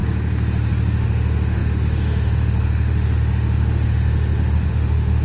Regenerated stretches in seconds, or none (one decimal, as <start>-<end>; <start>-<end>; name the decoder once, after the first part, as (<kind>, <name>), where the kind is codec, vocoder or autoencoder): 0.9-5.2 (autoencoder, DAC-VAE)